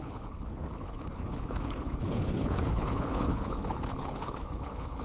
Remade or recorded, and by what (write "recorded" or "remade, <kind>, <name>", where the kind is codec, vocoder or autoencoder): remade, codec, HILCodec